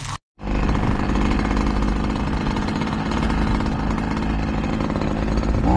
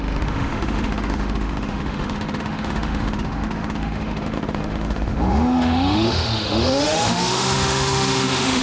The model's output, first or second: second